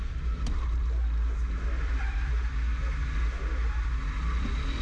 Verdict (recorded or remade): recorded